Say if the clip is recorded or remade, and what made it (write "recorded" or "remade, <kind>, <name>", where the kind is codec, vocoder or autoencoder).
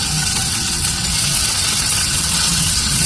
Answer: remade, vocoder, WaveNeXt